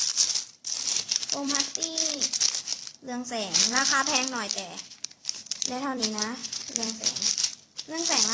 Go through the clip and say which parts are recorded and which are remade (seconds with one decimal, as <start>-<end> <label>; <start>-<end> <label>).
0.0-0.9 recorded; 0.9-2.3 remade; 2.3-2.7 recorded; 2.7-6.0 remade; 6.0-6.4 recorded; 6.4-7.1 remade; 7.1-8.3 recorded